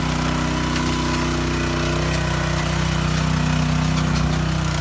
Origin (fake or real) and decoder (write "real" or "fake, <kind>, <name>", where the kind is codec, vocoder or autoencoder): real